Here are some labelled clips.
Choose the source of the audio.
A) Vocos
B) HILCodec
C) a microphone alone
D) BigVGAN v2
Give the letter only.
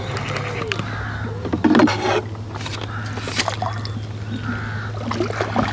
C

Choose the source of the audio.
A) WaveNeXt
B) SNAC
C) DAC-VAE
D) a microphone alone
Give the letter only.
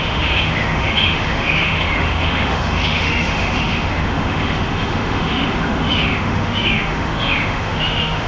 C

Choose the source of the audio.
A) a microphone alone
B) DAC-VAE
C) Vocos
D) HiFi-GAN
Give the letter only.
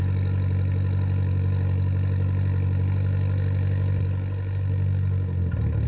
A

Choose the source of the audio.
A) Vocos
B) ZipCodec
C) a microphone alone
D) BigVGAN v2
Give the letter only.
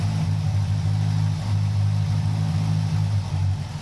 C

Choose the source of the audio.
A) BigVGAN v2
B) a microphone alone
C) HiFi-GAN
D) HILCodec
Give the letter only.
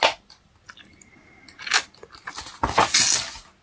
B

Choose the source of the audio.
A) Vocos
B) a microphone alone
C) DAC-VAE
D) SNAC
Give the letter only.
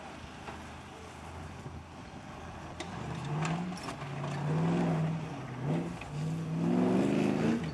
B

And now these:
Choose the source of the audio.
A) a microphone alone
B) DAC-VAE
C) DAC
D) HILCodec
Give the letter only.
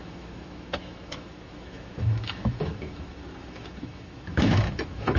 B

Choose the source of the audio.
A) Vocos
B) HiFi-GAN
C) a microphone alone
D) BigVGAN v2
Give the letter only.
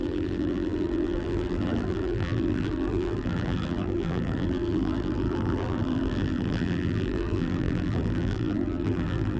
D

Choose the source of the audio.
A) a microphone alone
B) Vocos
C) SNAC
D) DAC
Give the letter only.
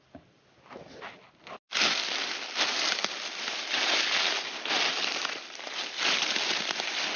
A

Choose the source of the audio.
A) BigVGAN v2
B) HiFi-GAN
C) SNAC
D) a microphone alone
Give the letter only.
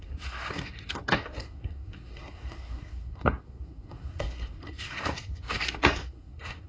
C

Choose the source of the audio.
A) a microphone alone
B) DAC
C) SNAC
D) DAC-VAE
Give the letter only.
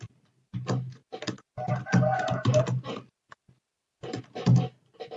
A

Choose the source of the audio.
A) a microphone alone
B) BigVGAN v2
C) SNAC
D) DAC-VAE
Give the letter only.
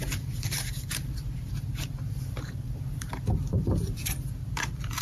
B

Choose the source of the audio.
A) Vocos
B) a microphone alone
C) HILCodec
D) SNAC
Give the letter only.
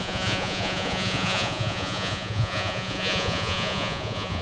A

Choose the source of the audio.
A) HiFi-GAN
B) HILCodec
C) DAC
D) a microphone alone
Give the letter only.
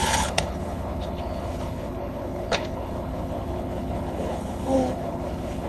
B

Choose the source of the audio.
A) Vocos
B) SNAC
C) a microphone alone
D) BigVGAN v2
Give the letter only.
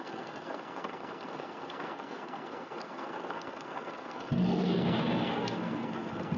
B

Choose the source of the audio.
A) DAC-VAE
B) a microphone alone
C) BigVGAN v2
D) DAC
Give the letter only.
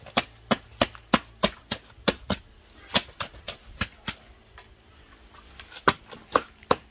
B